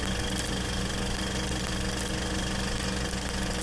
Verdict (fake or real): real